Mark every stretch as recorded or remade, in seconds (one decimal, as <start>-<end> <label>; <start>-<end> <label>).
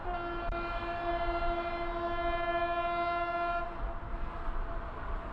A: 0.0-5.3 recorded